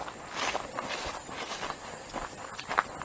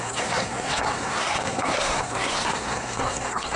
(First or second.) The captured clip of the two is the first